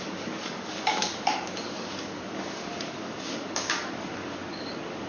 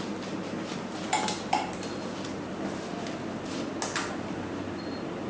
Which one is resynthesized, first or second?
first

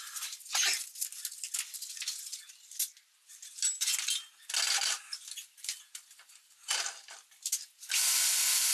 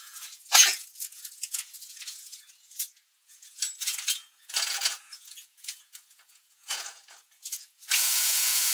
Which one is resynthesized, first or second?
second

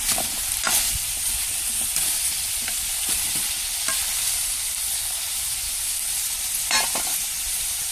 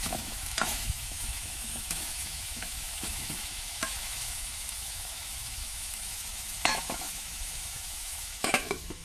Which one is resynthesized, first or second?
second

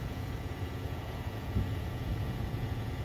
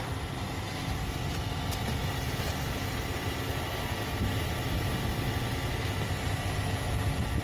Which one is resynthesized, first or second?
first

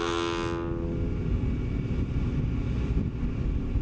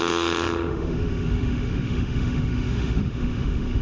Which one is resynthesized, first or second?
second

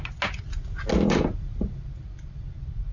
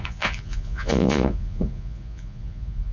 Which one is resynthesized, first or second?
second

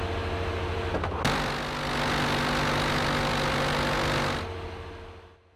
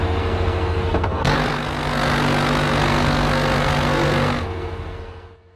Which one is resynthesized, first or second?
second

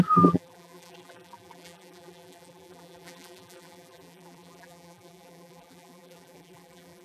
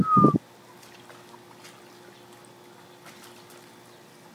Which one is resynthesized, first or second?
first